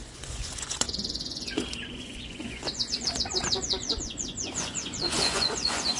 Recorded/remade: remade